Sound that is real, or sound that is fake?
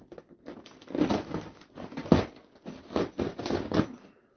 real